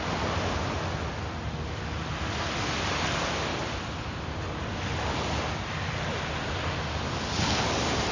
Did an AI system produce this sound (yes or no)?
no